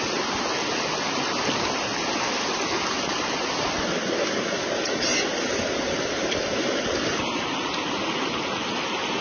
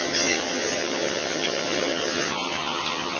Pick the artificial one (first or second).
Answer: second